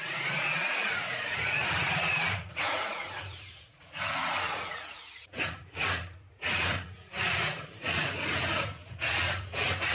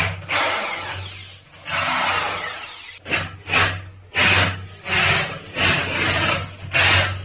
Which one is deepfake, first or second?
first